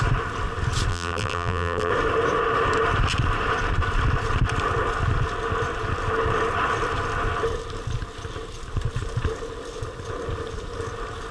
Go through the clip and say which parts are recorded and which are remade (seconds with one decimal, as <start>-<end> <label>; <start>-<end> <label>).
0.0-0.9 recorded; 0.9-1.9 remade; 1.9-11.3 recorded